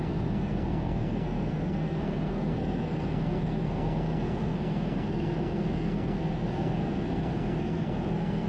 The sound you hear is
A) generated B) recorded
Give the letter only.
A